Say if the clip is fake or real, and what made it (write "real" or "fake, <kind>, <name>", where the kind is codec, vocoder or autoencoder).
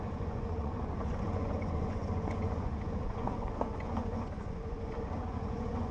fake, vocoder, Vocos